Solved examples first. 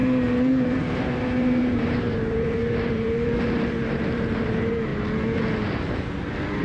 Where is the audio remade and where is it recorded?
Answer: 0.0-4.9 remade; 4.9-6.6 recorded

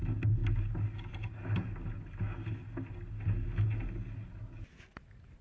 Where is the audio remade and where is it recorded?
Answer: 0.0-5.4 recorded

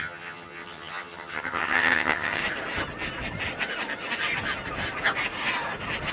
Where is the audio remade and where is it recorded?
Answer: 0.0-2.4 remade; 2.4-6.1 recorded